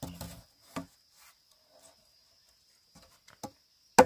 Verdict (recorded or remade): recorded